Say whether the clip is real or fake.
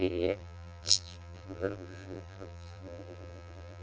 fake